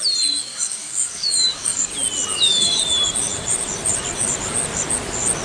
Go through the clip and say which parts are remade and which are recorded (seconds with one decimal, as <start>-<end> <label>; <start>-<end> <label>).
0.0-0.5 recorded; 0.5-1.9 remade; 1.9-2.3 recorded; 2.3-2.8 remade; 2.8-5.4 recorded